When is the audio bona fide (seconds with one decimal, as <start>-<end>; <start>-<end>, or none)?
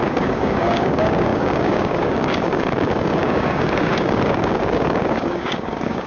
none